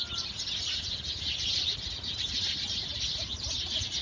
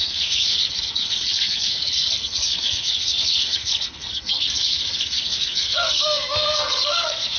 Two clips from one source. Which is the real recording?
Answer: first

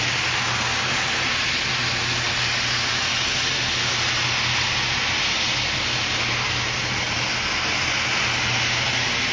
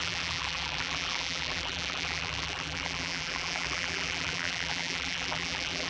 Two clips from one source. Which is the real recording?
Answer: first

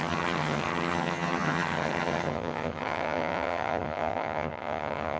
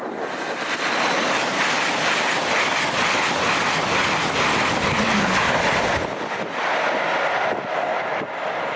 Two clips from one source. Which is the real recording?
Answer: second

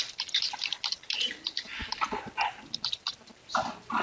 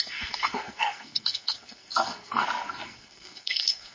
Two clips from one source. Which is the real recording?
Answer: first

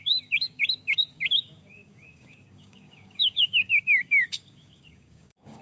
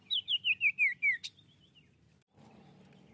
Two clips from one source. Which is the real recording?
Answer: second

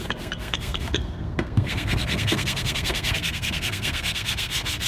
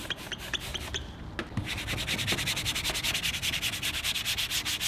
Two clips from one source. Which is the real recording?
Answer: second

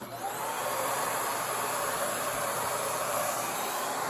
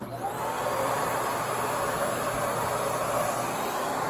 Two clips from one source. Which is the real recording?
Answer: second